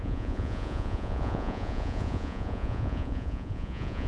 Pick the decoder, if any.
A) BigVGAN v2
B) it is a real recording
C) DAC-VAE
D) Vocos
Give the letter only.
D